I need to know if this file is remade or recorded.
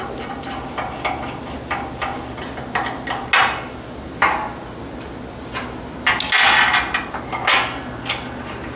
recorded